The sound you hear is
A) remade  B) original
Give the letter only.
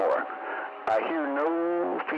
B